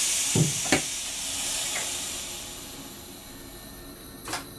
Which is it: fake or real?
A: real